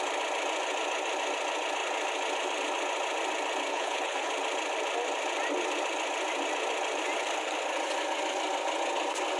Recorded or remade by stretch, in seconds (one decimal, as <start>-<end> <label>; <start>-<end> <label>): 0.0-3.7 recorded; 3.7-4.3 remade; 4.3-9.4 recorded